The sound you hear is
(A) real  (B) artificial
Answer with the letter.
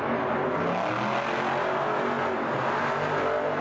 A